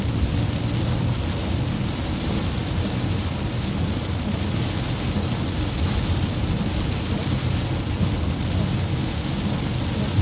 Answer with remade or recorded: recorded